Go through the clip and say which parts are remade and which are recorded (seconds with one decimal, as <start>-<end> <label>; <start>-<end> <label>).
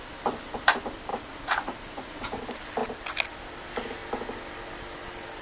0.0-1.1 recorded; 1.1-2.4 remade; 2.4-5.4 recorded